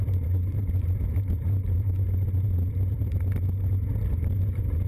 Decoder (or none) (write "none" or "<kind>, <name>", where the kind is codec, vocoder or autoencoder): vocoder, BigVGAN v2